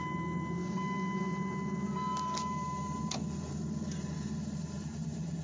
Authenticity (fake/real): real